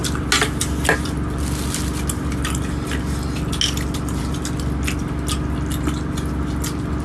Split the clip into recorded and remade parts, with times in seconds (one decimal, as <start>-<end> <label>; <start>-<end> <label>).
0.0-7.0 recorded